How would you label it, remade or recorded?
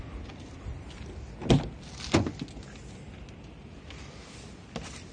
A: recorded